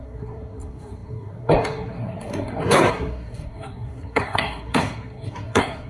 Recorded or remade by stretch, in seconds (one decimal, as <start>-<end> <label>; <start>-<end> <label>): 0.0-5.9 remade